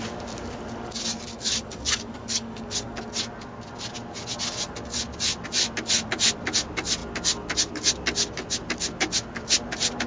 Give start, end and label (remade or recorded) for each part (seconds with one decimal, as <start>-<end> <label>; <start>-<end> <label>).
0.0-1.3 recorded; 1.3-3.0 remade; 3.0-10.1 recorded

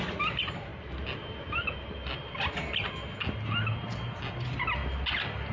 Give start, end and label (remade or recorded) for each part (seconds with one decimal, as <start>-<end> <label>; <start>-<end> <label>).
0.0-5.5 recorded

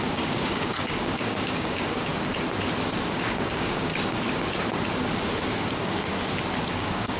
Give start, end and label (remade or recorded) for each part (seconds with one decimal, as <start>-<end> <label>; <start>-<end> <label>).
0.0-2.1 remade; 2.1-3.1 recorded; 3.1-3.9 remade; 3.9-5.6 recorded; 5.6-6.1 remade; 6.1-6.7 recorded; 6.7-7.2 remade

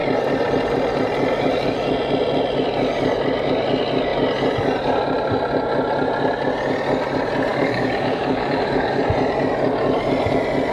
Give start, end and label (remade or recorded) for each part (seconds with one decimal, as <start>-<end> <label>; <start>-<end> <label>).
0.0-7.5 recorded; 7.5-9.0 remade; 9.0-10.7 recorded

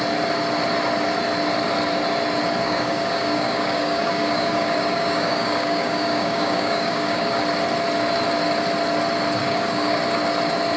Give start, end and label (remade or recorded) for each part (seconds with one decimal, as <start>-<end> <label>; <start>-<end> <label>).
0.0-2.6 recorded; 2.6-7.4 remade; 7.4-9.4 recorded; 9.4-10.0 remade; 10.0-10.8 recorded

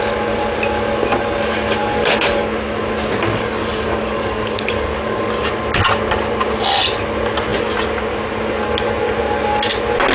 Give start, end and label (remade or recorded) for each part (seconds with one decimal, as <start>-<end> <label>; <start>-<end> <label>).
0.0-1.8 recorded; 1.8-2.5 remade; 2.5-3.3 recorded; 3.3-5.5 remade; 5.5-10.1 recorded